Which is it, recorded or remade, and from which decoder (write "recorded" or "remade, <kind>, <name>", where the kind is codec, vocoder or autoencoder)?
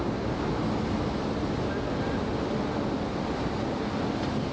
recorded